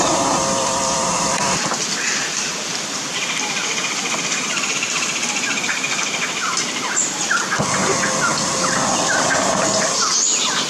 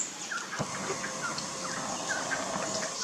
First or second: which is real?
second